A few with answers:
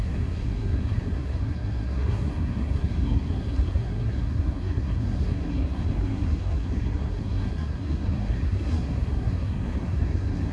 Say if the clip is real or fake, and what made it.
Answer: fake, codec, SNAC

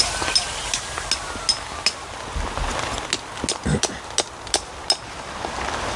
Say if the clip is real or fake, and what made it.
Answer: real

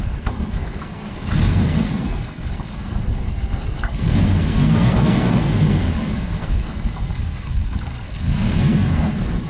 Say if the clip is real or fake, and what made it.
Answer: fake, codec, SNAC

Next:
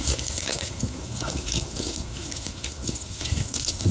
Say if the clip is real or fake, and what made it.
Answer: fake, codec, SNAC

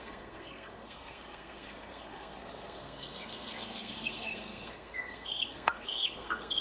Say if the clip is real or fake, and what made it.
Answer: fake, codec, SNAC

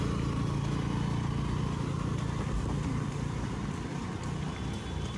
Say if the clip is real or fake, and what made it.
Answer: real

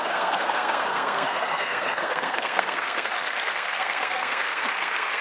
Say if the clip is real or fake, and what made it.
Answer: fake, codec, SNAC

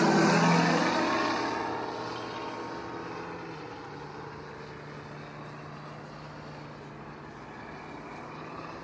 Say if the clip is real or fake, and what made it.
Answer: real